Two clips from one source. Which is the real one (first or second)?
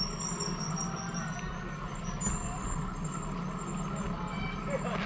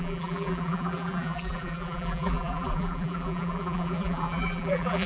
first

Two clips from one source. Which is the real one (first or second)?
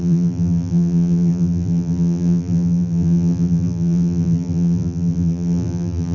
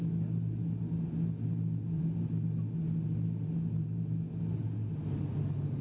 second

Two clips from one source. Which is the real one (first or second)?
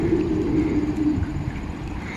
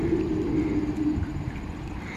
second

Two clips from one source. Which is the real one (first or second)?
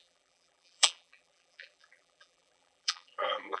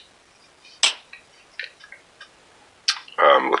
second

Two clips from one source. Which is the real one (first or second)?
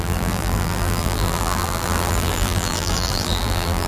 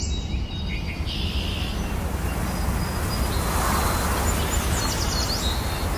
second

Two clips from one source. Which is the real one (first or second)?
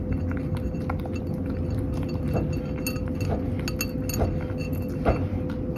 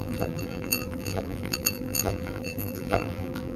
first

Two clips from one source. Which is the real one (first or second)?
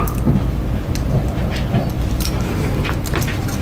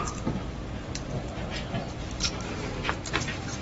first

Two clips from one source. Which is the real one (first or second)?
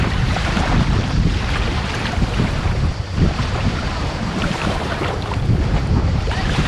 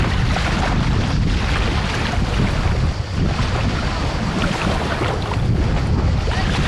second